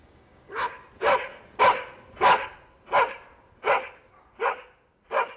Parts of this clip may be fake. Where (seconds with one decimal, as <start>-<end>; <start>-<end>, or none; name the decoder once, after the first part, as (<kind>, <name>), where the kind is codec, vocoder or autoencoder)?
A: 0.0-0.8 (codec, DAC)